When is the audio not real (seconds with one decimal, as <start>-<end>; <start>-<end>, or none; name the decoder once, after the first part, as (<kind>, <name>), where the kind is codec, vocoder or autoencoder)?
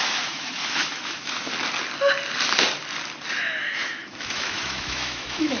0.0-1.5 (autoencoder, DAC-VAE); 3.4-5.6